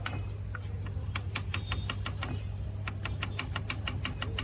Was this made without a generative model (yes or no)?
yes